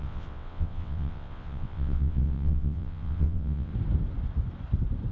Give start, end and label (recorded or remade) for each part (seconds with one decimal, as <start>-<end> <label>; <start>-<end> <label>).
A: 0.0-3.7 remade; 3.7-5.1 recorded